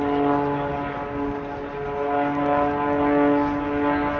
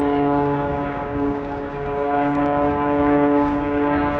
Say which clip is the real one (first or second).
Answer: first